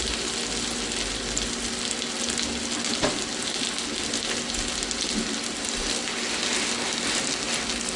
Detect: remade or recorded recorded